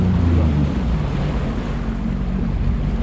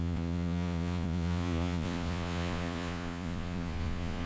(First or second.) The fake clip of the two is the second